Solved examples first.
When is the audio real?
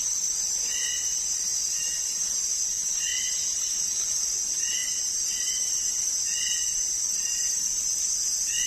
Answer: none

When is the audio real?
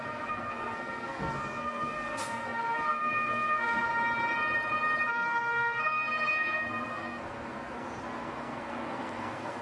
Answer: 3.9-5.1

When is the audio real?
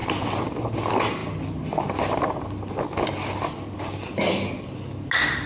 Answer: 0.0-5.5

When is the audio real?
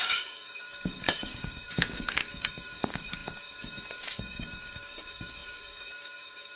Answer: none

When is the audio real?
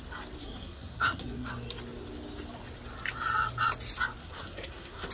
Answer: 0.0-0.4; 1.5-4.2